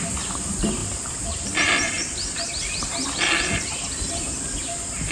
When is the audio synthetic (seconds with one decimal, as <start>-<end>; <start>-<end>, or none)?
0.8-2.5